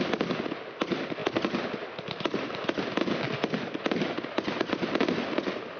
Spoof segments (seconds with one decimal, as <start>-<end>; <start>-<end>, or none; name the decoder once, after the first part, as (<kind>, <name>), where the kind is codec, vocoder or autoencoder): none